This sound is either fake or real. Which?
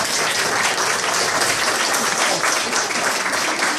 real